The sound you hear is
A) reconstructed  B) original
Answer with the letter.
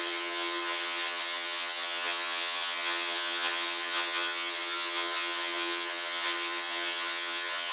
A